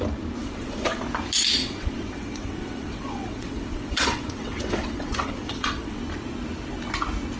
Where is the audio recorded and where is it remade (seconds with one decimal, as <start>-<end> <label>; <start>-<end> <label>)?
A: 0.0-0.4 recorded; 0.4-1.0 remade; 1.0-1.6 recorded; 1.6-6.0 remade; 6.0-7.4 recorded